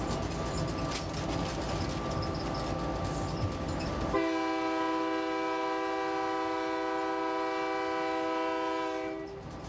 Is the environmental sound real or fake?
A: real